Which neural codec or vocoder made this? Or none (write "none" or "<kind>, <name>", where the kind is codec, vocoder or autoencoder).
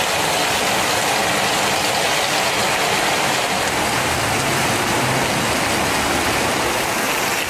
none